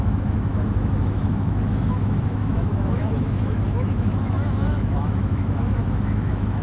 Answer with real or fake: fake